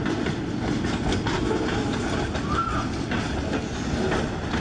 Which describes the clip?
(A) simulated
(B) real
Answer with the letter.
B